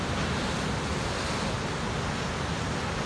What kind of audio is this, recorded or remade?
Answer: recorded